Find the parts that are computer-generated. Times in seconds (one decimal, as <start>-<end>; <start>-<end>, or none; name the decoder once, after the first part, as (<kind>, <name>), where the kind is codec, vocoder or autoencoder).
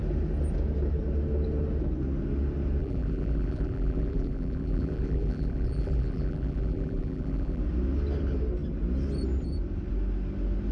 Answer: 2.8-7.6 (vocoder, BigVGAN v2)